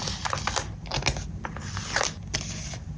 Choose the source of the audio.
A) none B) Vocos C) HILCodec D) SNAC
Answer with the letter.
A